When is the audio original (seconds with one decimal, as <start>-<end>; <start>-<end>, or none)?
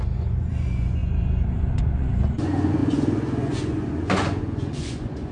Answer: none